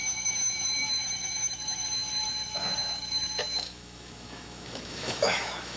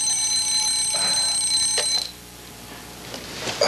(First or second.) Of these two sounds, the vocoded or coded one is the first